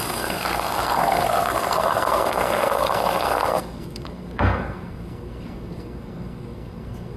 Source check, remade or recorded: remade